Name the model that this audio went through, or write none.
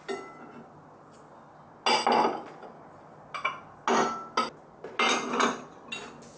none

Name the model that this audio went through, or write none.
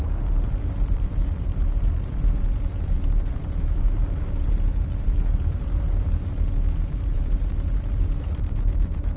vocoder, BigVGAN v2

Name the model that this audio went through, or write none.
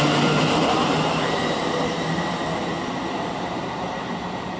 none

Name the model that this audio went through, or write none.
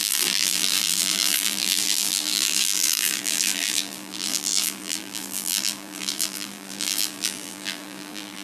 vocoder, BigVGAN v2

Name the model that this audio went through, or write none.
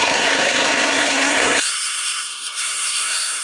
codec, SNAC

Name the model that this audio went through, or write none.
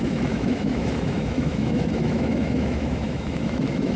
autoencoder, DAC-VAE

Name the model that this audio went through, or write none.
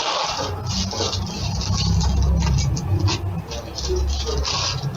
none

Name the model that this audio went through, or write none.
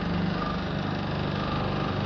none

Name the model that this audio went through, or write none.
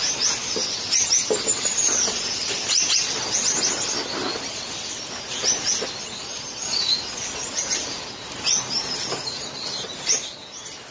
none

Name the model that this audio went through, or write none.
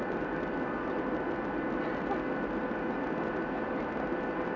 none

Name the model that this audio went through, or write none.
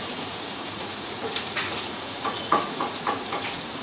vocoder, Vocos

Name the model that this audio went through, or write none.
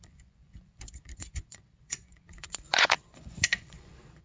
vocoder, Vocos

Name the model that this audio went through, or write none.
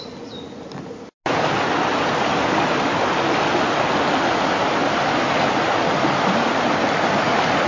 none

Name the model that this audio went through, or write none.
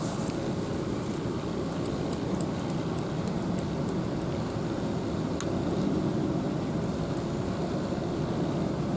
none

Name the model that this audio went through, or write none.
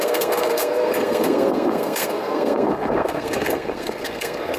codec, SNAC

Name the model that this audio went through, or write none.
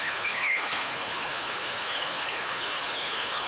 codec, HILCodec